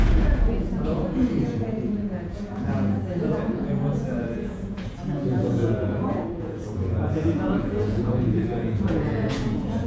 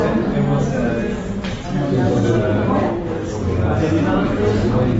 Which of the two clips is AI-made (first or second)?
first